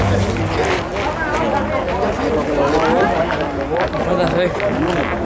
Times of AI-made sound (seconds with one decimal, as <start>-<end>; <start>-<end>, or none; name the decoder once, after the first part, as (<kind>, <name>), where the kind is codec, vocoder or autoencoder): none